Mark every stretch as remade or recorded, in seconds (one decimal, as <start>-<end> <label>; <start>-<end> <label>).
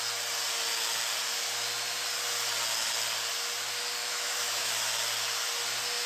0.0-4.0 recorded; 4.0-4.7 remade; 4.7-6.1 recorded